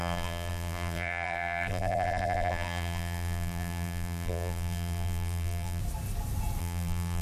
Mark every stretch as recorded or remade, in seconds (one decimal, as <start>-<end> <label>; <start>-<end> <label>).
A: 0.0-5.8 remade; 5.8-6.6 recorded; 6.6-7.2 remade